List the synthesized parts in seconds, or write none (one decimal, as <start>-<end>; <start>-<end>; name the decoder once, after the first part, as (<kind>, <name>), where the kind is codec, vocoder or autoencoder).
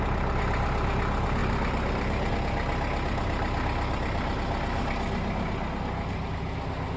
1.4-2.3 (vocoder, BigVGAN v2)